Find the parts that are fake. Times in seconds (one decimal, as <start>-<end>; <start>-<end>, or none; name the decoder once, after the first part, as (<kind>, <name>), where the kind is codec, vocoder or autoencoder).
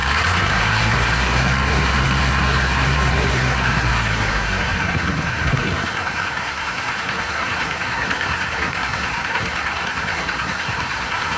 0.0-11.4 (codec, SNAC)